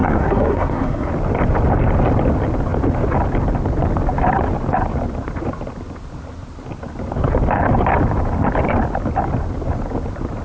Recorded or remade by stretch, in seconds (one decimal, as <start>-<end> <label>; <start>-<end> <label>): 0.0-1.1 remade; 1.1-10.4 recorded